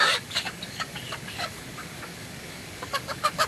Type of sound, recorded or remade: remade